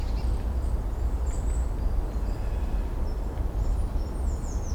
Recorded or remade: recorded